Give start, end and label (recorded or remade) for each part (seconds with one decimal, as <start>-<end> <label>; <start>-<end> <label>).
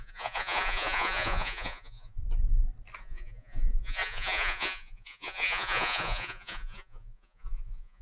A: 0.0-2.2 remade; 2.2-3.0 recorded; 3.0-8.0 remade